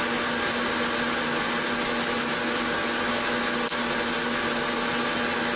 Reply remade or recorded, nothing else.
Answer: recorded